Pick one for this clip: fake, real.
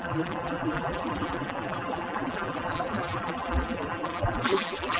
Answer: fake